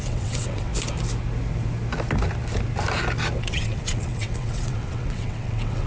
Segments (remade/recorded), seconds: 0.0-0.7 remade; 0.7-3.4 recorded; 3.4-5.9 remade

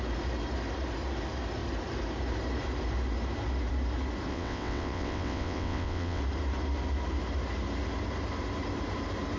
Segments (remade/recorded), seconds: 0.0-4.3 recorded; 4.3-6.2 remade; 6.2-9.4 recorded

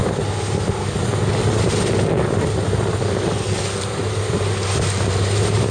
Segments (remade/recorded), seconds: 0.0-5.7 recorded

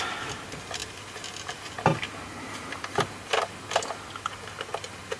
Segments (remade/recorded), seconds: 0.0-5.2 recorded

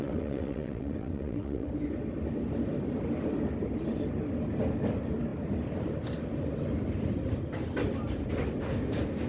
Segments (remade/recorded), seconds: 0.0-1.7 remade; 1.7-9.3 recorded

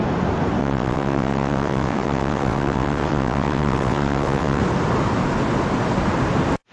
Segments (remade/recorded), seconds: 0.0-0.6 recorded; 0.6-4.6 remade; 4.6-6.7 recorded

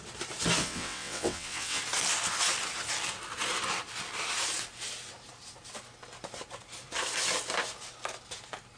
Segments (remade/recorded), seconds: 0.0-0.6 recorded; 0.6-1.8 remade; 1.8-8.8 recorded

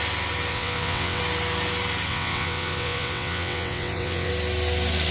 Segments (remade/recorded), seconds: 0.0-0.5 recorded; 0.5-1.2 remade; 1.2-2.1 recorded; 2.1-4.3 remade; 4.3-5.1 recorded